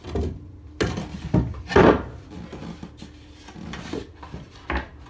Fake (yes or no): no